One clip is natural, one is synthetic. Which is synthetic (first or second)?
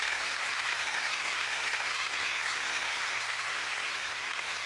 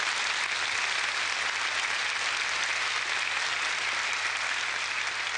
first